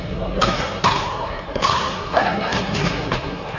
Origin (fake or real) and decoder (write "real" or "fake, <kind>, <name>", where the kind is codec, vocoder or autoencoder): fake, codec, SNAC